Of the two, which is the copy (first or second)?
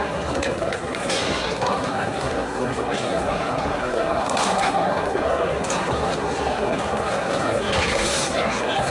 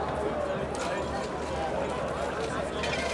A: first